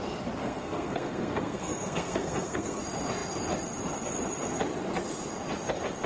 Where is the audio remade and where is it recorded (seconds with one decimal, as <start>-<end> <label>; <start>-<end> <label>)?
0.0-0.4 recorded; 0.4-2.8 remade; 2.8-6.1 recorded